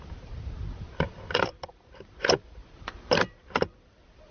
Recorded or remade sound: remade